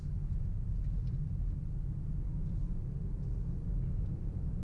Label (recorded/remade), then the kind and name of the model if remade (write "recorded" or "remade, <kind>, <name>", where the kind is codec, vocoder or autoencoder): recorded